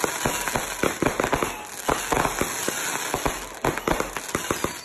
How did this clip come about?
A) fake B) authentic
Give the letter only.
B